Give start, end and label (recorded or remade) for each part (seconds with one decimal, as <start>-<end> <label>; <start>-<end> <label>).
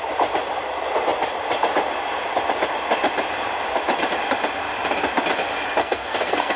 0.0-5.8 recorded; 5.8-6.6 remade